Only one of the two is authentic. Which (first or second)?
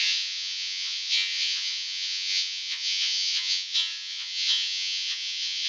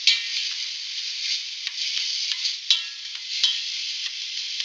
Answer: second